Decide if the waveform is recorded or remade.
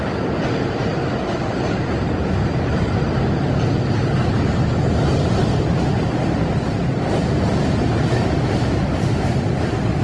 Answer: recorded